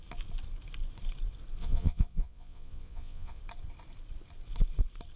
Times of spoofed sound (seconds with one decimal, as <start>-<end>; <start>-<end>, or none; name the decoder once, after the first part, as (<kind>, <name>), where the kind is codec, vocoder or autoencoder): 1.6-3.4 (vocoder, Vocos)